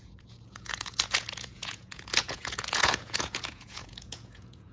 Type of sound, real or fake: fake